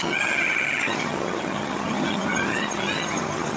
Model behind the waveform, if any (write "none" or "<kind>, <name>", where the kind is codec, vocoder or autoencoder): vocoder, HiFi-GAN